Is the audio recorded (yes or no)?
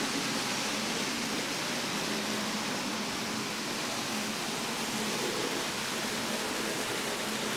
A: yes